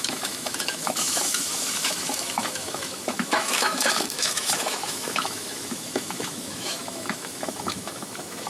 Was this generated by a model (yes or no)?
yes